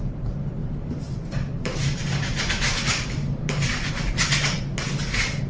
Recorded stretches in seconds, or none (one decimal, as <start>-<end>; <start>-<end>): 0.0-0.6; 3.9-5.5